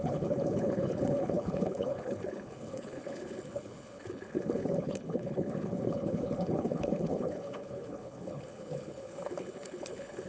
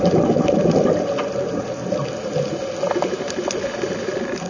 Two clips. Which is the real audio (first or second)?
second